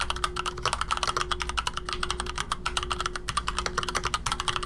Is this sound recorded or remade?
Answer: recorded